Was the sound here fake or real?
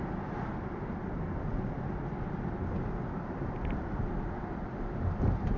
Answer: real